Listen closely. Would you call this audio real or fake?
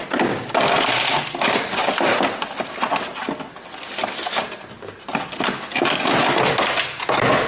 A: real